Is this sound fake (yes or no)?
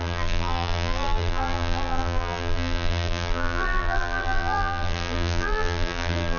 yes